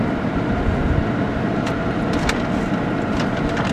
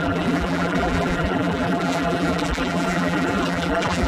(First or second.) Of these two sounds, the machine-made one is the second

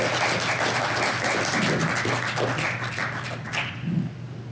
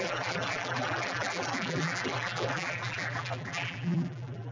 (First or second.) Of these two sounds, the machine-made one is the second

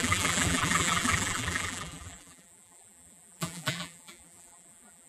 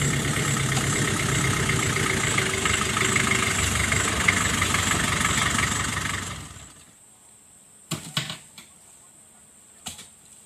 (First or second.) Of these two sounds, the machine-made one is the first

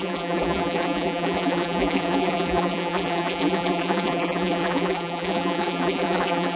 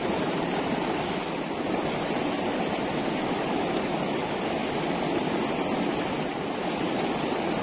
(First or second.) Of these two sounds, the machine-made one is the first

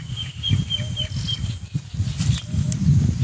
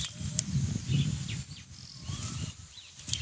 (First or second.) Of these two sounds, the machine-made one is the second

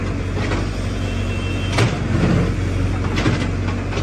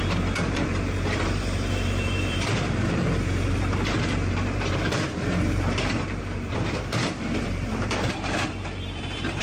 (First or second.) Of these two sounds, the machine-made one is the second